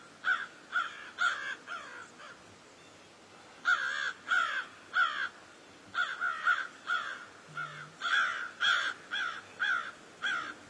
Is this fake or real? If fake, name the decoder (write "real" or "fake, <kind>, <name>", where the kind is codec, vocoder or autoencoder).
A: real